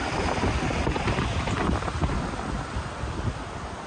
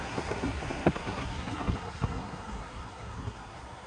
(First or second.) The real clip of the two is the first